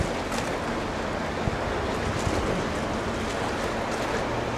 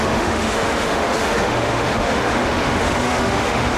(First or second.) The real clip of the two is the first